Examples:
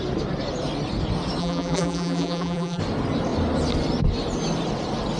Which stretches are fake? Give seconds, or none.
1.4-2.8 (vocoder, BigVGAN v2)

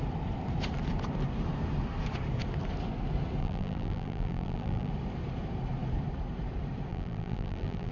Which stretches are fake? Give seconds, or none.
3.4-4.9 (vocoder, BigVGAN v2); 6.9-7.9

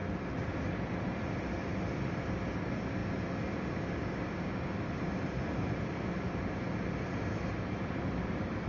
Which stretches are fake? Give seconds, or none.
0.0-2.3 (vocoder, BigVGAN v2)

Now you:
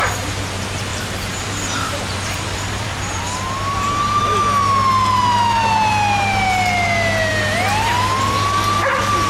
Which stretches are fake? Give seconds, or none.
0.9-3.2 (vocoder, BigVGAN v2)

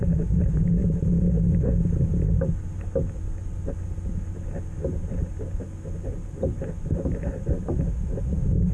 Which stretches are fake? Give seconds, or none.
6.1-6.6 (vocoder, BigVGAN v2)

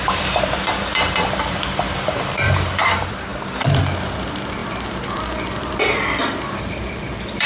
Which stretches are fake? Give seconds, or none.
0.0-7.5 (vocoder, BigVGAN v2)

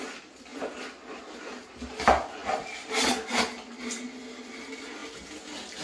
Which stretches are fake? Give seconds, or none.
none

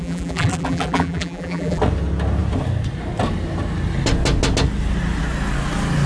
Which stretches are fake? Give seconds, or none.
0.0-1.8 (vocoder, BigVGAN v2)